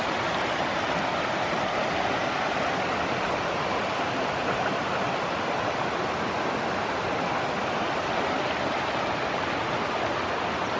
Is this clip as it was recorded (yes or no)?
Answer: yes